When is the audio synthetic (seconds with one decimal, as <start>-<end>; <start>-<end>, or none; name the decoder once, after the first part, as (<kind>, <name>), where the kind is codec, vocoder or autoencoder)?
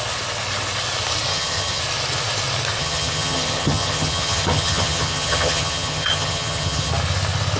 1.3-1.8 (vocoder, HiFi-GAN); 2.8-6.9